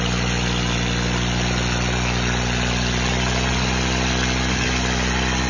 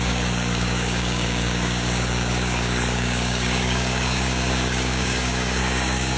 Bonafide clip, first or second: first